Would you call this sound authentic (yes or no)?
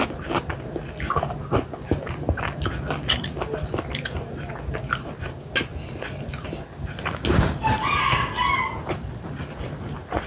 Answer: yes